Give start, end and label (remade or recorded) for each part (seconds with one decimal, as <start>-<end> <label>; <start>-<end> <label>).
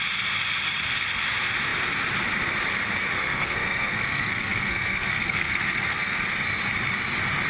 0.0-3.2 recorded; 3.2-6.3 remade; 6.3-7.5 recorded